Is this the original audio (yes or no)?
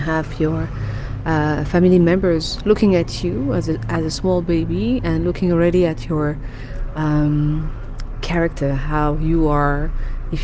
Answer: yes